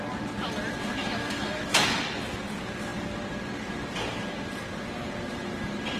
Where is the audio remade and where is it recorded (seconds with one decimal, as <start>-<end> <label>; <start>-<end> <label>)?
0.0-1.0 recorded; 1.0-2.0 remade; 2.0-6.0 recorded